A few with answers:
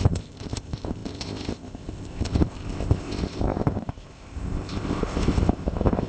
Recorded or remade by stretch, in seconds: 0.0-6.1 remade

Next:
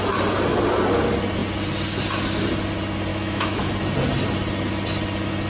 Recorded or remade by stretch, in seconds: 0.0-3.1 recorded; 3.1-3.7 remade; 3.7-5.5 recorded

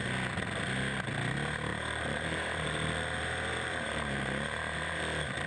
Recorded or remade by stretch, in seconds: 0.0-1.7 recorded; 1.7-5.0 remade; 5.0-5.5 recorded

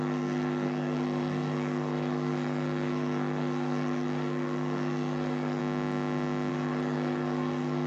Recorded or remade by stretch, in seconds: 0.0-5.6 remade; 5.6-6.5 recorded; 6.5-7.9 remade

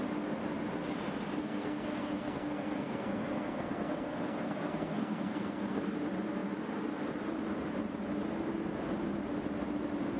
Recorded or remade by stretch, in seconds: 0.0-1.4 recorded; 1.4-5.8 remade; 5.8-10.2 recorded

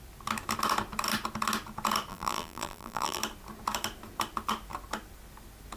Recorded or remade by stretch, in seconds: 0.0-2.1 recorded; 2.1-3.2 remade; 3.2-5.8 recorded